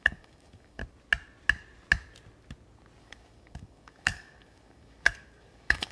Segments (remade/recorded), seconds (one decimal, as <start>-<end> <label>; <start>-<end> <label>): 0.0-0.8 remade; 0.8-3.0 recorded; 3.0-5.9 remade